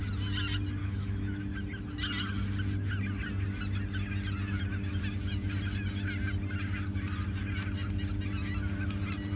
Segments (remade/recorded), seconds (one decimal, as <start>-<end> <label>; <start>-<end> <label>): 0.0-0.8 recorded; 0.8-1.4 remade; 1.4-9.4 recorded